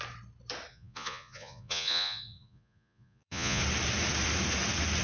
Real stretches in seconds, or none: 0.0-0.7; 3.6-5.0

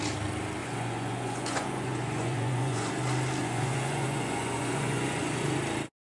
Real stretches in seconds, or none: 0.0-0.6; 2.9-3.4; 5.6-6.1

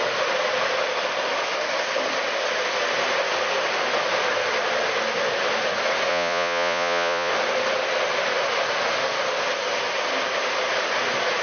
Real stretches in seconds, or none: 0.0-6.1; 7.3-11.4